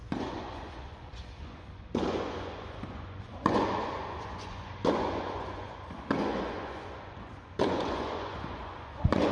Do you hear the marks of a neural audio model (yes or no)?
yes